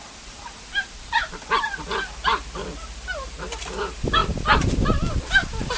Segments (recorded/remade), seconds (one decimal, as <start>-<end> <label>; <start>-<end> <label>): 0.0-5.8 recorded